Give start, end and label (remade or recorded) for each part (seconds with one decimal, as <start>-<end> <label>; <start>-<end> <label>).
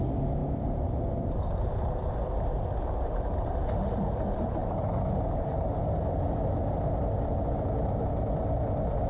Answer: 0.0-9.1 recorded